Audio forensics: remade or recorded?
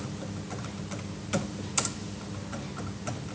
recorded